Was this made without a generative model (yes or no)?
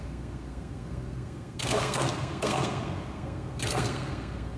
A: no